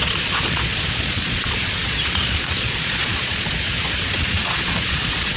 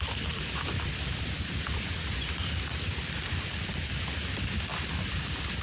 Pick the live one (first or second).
second